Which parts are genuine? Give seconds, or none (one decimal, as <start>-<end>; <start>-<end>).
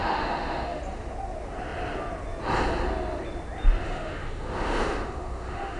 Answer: 0.8-3.8